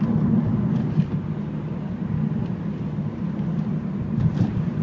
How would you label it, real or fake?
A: real